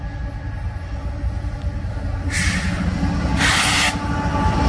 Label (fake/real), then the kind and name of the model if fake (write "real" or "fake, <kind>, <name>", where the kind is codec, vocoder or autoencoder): real